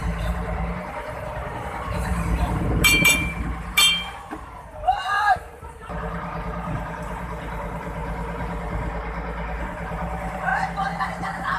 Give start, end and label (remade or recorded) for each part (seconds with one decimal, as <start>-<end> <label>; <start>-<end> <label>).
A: 0.0-3.9 remade; 3.9-5.4 recorded; 5.4-8.0 remade; 8.0-9.6 recorded; 9.6-10.5 remade; 10.5-11.0 recorded; 11.0-11.6 remade